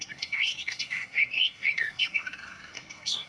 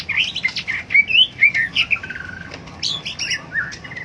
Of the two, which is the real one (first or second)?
second